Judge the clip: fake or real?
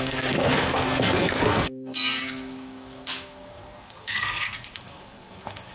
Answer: fake